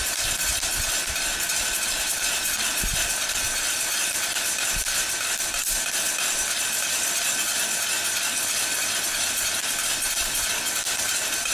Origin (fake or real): real